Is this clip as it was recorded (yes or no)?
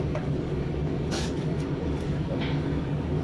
no